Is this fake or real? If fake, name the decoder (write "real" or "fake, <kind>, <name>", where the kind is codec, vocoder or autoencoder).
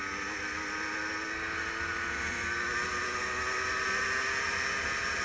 real